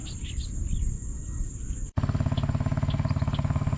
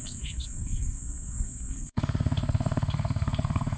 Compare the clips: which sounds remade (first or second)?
second